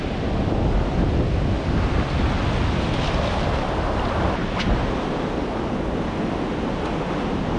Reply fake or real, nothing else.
real